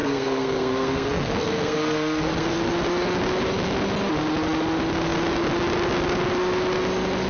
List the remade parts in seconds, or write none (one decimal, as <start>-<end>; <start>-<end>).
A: 0.0-2.7